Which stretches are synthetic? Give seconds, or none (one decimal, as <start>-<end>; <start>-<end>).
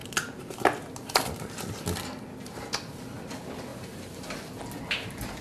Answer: none